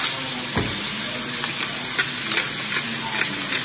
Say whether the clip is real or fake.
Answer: real